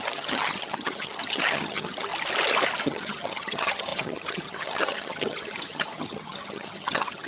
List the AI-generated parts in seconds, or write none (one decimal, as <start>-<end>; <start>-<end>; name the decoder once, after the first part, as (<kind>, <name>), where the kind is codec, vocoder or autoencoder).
0.0-2.1 (vocoder, HiFi-GAN); 2.8-7.3